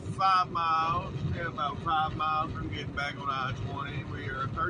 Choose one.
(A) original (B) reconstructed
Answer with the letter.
A